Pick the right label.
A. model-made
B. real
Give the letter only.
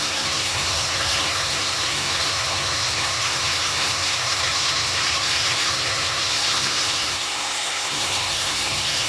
A